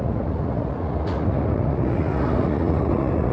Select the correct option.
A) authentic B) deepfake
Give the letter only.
B